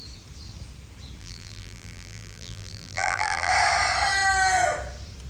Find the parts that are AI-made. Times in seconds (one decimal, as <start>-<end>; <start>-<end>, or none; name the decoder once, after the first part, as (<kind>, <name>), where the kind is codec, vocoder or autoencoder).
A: 1.2-3.5 (vocoder, BigVGAN v2)